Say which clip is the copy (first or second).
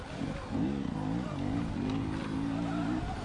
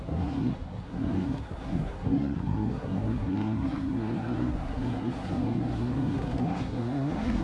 second